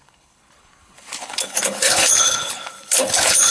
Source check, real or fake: fake